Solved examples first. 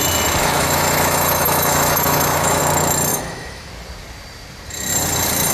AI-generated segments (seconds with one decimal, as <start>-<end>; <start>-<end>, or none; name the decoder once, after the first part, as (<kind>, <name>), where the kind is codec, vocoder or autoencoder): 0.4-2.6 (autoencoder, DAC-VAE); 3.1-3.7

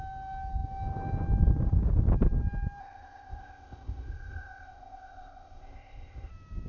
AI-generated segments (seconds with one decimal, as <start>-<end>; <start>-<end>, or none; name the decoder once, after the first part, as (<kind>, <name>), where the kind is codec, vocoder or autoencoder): 2.8-6.3 (codec, ZipCodec)

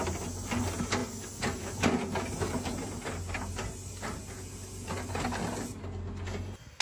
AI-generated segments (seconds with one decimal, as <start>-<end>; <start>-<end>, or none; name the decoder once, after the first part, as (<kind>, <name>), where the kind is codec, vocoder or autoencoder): none

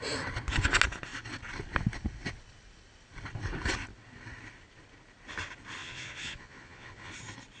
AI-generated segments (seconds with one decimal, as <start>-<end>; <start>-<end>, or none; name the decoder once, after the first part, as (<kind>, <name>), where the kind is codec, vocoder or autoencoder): 5.8-7.1 (vocoder, Vocos)